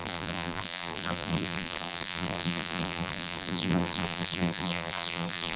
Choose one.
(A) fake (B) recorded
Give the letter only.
A